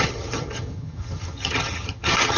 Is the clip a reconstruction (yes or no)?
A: yes